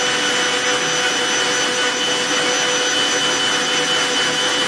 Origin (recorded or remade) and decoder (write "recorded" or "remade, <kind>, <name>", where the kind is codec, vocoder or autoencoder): recorded